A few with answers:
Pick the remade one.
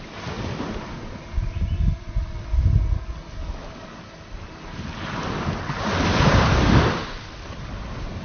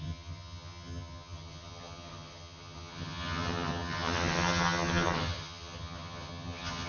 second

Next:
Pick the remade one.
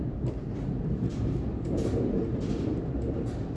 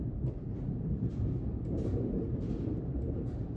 second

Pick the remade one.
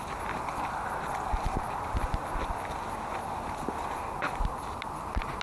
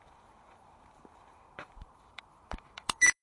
second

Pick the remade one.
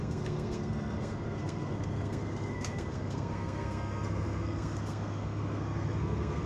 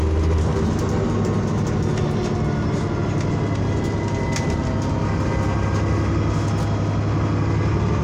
first